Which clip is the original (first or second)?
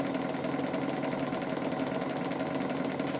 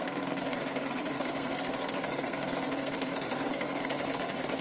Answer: first